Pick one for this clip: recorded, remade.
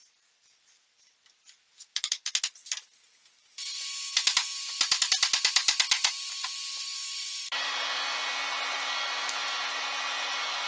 recorded